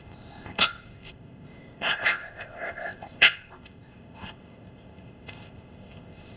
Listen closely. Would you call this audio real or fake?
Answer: fake